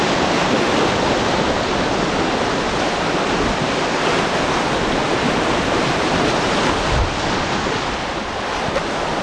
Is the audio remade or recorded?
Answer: recorded